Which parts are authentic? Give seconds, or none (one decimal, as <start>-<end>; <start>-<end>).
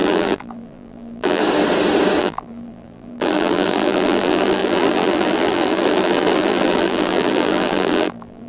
1.4-2.2